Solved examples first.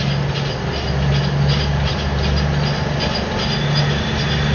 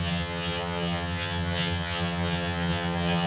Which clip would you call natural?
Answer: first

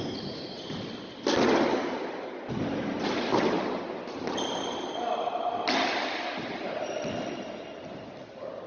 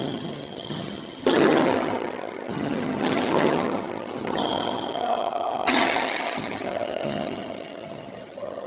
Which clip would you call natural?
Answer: first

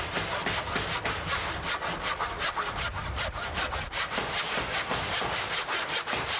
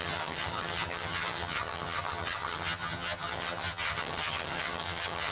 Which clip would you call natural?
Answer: first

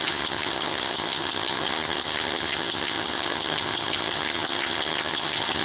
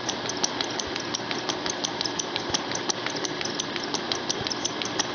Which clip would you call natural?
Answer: second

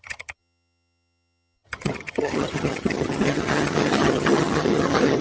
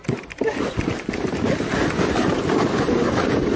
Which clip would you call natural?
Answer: second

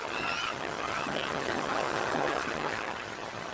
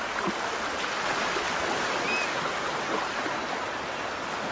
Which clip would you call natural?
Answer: second